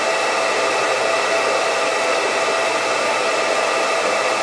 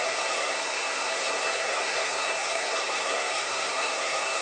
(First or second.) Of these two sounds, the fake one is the second